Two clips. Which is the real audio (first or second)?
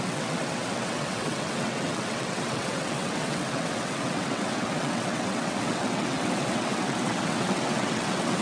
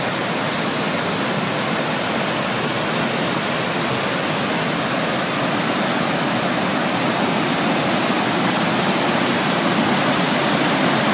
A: second